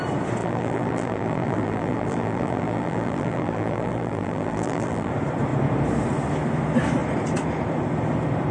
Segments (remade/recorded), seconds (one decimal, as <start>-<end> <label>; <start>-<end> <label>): 0.0-0.4 recorded; 0.4-5.1 remade; 5.1-8.5 recorded